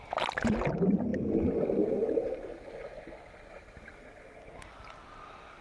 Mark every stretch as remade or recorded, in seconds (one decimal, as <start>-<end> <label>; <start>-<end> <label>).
0.0-5.6 recorded